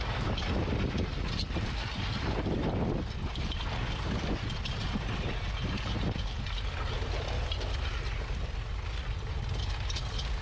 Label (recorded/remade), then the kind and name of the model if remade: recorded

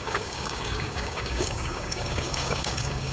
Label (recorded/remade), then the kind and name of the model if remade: remade, codec, DAC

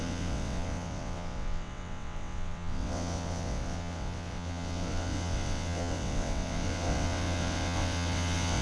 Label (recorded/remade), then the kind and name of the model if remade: remade, vocoder, WaveNeXt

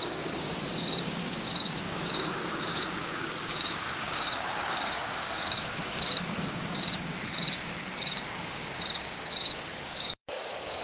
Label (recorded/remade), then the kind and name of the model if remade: remade, codec, DAC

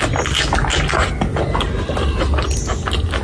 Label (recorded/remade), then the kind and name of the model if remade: recorded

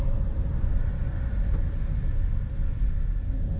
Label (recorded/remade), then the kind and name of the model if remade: recorded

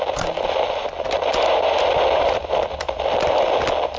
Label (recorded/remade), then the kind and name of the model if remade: recorded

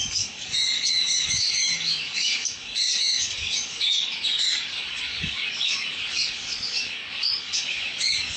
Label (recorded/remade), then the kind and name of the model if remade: remade, codec, DAC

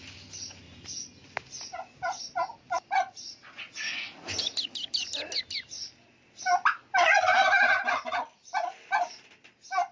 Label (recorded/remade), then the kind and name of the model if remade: recorded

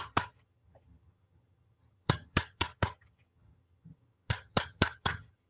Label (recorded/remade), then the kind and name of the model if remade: remade, vocoder, HiFi-GAN